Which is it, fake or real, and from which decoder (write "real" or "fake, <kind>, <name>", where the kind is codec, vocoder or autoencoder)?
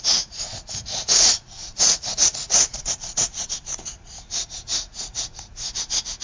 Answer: fake, vocoder, Vocos